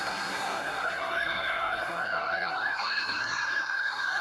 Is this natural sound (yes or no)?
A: no